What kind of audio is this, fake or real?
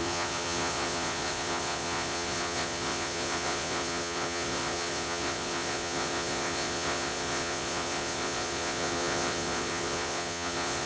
fake